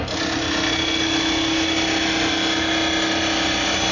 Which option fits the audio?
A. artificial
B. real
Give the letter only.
B